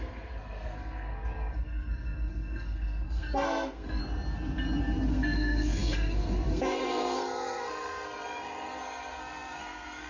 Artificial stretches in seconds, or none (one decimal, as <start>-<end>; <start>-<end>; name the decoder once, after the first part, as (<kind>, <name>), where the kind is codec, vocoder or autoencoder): 0.0-4.0 (codec, SNAC); 5.1-10.1